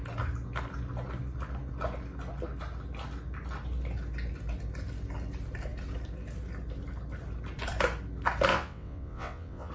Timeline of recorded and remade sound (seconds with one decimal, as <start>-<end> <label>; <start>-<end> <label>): 0.0-8.5 recorded; 8.5-9.7 remade